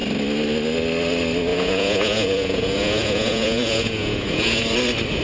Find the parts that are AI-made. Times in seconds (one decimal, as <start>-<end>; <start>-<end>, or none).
1.5-4.6